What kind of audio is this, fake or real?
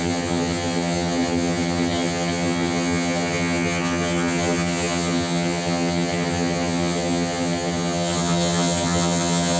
fake